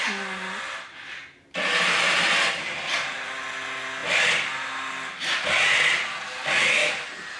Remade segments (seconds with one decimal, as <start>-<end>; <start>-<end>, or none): none